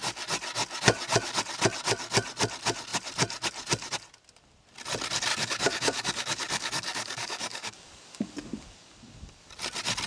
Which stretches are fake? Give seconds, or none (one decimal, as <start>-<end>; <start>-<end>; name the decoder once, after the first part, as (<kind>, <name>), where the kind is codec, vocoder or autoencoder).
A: 5.3-9.5 (codec, DAC)